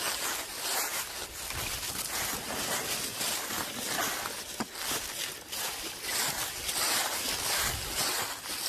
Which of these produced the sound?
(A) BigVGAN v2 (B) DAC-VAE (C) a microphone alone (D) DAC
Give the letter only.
C